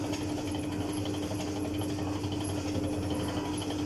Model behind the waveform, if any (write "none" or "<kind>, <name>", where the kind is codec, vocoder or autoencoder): none